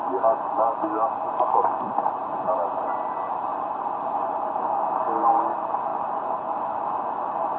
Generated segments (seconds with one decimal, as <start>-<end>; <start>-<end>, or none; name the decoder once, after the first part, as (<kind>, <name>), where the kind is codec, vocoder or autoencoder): 3.5-4.3 (vocoder, BigVGAN v2); 5.9-6.9

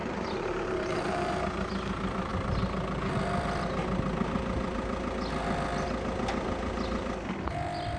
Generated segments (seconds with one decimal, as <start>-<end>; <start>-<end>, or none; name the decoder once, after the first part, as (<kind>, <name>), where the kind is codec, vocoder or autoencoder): 0.0-1.3 (vocoder, BigVGAN v2)